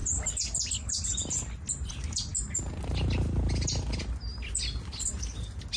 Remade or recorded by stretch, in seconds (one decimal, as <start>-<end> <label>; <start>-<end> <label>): 0.0-5.8 recorded